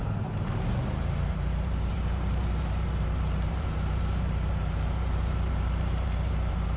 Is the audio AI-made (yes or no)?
yes